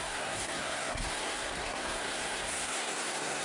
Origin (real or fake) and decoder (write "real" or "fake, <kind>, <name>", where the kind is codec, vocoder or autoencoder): fake, codec, SNAC